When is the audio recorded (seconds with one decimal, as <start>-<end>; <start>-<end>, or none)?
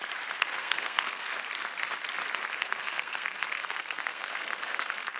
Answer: 0.0-0.6; 1.4-2.6